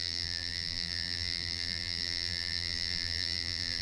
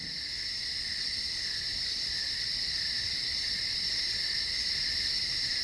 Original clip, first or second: second